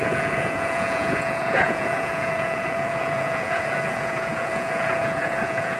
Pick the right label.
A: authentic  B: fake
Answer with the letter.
B